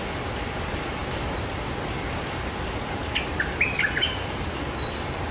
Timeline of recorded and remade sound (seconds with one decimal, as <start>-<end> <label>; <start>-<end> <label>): 0.0-5.3 recorded